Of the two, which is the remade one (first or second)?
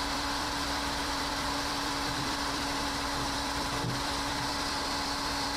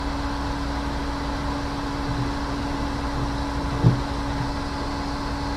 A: first